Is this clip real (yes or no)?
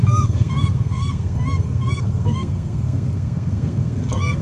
no